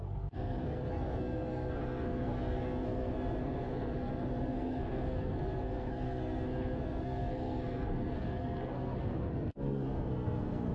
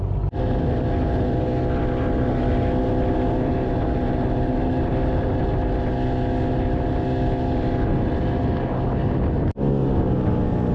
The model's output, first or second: first